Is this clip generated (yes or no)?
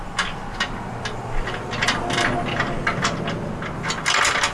no